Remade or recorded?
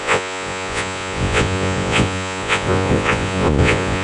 remade